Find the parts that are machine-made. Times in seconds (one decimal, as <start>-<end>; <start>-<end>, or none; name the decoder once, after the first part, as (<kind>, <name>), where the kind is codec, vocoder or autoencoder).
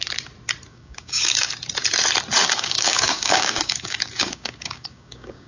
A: 0.7-1.5 (codec, DAC); 2.4-5.5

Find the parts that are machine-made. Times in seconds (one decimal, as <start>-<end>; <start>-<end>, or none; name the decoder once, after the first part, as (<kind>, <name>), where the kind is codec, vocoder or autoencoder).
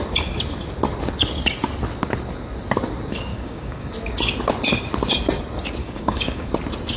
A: 3.3-3.9 (codec, DAC); 5.8-6.5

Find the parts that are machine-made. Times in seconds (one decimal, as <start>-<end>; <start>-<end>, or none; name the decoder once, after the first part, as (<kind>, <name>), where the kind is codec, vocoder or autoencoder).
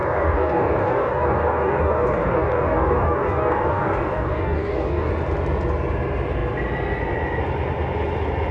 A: 0.0-5.1 (codec, DAC)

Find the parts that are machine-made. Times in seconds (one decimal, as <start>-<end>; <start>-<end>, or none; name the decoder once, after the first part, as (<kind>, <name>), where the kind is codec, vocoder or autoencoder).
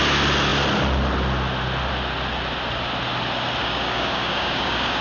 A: 3.6-5.0 (codec, DAC)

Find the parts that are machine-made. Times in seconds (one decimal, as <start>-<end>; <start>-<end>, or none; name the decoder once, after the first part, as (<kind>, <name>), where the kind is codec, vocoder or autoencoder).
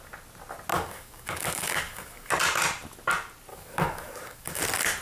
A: 0.7-2.3 (codec, DAC); 3.5-4.6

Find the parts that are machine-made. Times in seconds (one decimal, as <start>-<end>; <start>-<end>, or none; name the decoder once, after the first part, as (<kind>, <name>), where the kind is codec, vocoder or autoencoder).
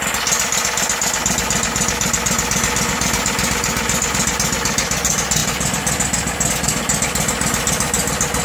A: none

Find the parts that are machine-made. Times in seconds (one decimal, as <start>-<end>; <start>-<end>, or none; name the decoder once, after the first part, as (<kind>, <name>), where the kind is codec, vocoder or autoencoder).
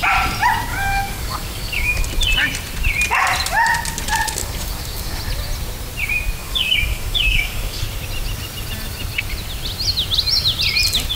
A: 0.7-2.0 (codec, DAC); 4.4-5.2; 6.4-7.8